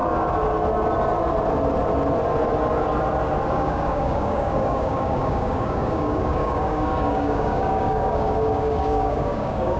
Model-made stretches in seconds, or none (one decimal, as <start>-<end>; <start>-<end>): 3.5-9.8